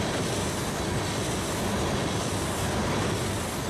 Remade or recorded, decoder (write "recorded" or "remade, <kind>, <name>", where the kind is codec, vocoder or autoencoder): recorded